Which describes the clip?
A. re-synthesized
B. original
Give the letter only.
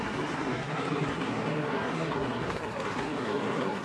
A